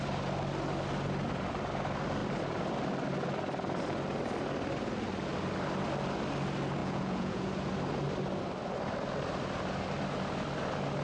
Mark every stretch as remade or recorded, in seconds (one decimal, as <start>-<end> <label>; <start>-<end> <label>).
0.0-6.8 recorded; 6.8-7.5 remade; 7.5-11.0 recorded